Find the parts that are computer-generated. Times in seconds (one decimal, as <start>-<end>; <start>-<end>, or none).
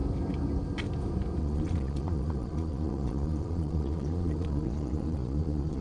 1.4-5.8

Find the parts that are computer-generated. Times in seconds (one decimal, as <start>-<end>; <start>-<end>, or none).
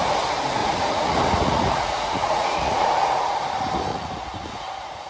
0.6-3.5; 3.9-5.1